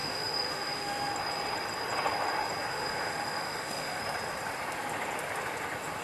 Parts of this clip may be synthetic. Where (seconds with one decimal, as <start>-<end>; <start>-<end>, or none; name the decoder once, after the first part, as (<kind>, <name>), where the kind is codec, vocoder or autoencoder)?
0.0-1.1 (autoencoder, DAC-VAE); 2.7-4.0

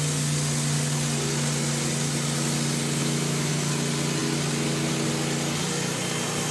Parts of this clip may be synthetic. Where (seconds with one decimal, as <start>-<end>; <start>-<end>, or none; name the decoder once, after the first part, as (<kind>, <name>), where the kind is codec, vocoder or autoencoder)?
3.0-3.5 (autoencoder, DAC-VAE)

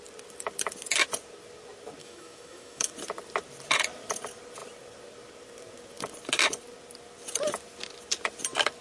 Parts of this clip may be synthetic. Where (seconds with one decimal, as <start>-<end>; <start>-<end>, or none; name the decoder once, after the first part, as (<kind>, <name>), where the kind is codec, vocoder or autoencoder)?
2.0-2.9 (autoencoder, DAC-VAE)

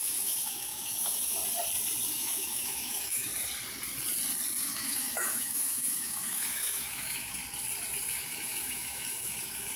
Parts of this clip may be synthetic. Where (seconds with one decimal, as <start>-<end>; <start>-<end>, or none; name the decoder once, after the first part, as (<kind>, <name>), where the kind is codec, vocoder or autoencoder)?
0.0-1.4 (autoencoder, DAC-VAE); 2.1-3.3; 4.6-7.4; 8.1-9.8

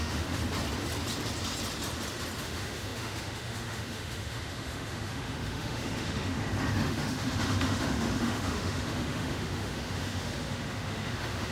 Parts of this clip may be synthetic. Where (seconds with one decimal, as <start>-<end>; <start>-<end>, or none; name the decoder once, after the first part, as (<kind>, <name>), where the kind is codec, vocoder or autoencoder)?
0.0-0.4 (autoencoder, DAC-VAE); 2.4-11.5

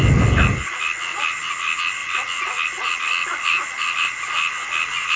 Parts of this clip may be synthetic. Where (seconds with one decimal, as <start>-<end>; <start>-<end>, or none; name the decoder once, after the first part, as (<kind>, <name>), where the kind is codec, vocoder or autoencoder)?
none